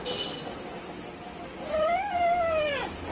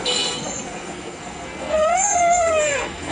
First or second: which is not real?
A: second